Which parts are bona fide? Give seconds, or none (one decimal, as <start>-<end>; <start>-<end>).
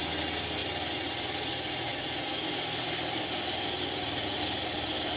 0.0-5.2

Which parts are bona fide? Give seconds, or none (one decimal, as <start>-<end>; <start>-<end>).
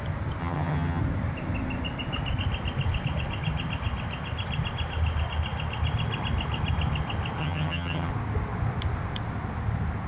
0.0-0.4; 1.0-7.4; 8.1-10.1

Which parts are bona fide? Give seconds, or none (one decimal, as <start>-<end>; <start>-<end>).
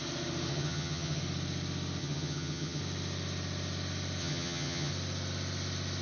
0.0-0.5; 1.2-2.0; 2.8-4.2; 4.9-6.0